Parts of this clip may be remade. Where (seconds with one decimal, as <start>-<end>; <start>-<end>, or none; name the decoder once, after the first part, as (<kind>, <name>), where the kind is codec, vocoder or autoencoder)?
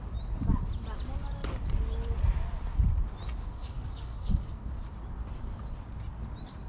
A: 3.5-4.7 (codec, SNAC)